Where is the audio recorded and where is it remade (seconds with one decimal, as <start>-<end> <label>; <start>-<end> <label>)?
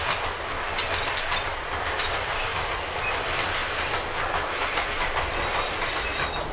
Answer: 0.0-6.5 recorded